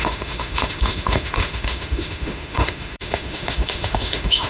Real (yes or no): no